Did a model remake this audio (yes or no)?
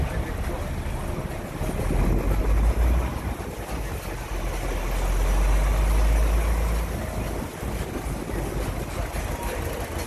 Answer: no